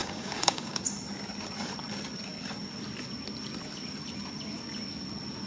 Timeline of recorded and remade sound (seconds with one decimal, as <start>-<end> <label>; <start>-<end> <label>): 0.0-0.8 remade; 0.8-5.5 recorded